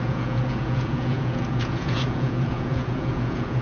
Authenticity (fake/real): fake